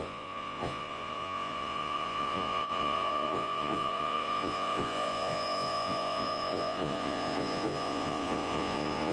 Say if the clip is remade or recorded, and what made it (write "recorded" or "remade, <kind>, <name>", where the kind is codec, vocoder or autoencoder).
remade, vocoder, Vocos